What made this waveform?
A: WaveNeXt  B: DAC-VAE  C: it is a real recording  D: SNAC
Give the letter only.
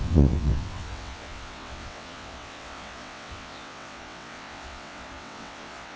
A